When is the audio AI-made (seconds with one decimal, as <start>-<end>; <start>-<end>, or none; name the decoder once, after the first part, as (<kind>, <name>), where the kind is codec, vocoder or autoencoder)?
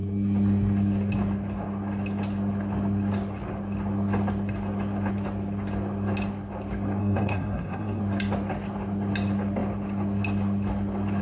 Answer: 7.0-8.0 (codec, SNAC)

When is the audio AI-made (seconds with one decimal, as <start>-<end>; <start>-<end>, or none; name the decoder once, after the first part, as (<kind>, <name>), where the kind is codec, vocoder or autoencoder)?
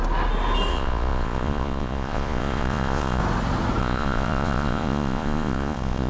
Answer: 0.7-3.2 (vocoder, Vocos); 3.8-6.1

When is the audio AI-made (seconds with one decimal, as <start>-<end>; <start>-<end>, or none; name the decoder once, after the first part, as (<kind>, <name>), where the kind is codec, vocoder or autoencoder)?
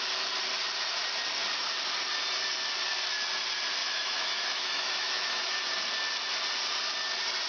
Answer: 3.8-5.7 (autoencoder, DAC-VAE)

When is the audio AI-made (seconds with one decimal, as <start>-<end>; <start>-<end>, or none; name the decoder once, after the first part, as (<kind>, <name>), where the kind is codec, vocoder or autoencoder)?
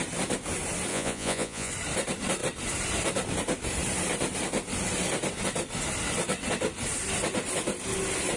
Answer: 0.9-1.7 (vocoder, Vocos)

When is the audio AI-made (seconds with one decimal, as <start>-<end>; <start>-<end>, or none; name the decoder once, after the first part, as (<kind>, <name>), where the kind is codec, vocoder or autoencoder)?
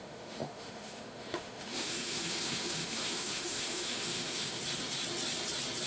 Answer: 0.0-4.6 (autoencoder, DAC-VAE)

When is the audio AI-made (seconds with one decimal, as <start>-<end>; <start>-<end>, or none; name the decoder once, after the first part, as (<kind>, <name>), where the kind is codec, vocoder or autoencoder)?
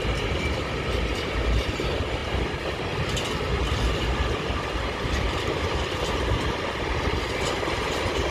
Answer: none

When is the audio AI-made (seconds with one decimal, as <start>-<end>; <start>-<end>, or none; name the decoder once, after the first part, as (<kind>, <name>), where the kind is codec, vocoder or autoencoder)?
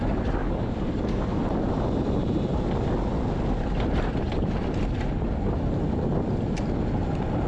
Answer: 0.4-1.4 (codec, DAC)